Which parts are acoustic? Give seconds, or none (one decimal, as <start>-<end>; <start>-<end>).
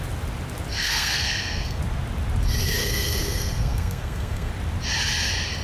0.0-0.7; 1.8-2.8; 4.5-5.6